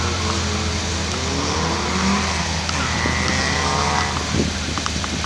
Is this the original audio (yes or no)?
yes